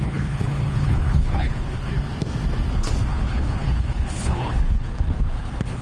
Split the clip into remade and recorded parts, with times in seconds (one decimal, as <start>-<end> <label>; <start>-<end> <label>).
0.0-1.9 remade; 1.9-2.7 recorded; 2.7-5.8 remade